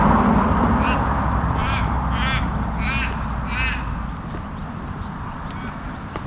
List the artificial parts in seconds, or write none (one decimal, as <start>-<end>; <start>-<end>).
none